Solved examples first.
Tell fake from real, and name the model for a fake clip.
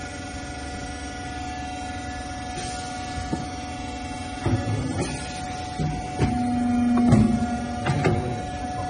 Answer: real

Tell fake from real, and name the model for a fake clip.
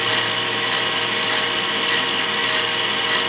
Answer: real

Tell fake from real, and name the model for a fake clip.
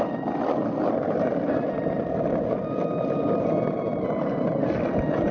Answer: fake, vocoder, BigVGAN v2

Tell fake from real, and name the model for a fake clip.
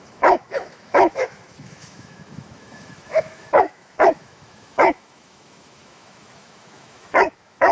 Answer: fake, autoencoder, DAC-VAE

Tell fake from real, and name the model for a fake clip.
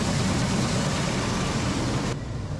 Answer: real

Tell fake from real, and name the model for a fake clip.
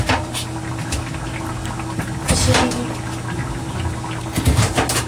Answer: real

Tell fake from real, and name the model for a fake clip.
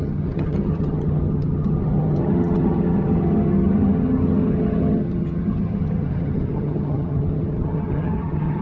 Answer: fake, vocoder, HiFi-GAN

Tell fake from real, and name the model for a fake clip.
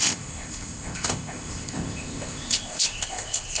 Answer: fake, codec, ZipCodec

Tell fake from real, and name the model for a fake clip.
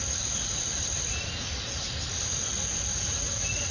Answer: real